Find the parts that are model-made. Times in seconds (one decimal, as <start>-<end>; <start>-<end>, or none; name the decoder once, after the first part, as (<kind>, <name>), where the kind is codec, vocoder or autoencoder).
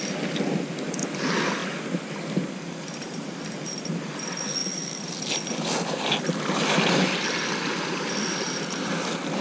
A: 4.6-5.3 (vocoder, BigVGAN v2)